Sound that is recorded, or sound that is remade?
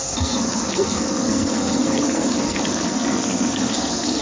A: remade